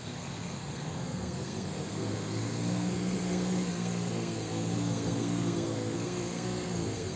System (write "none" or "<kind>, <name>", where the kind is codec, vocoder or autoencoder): codec, SNAC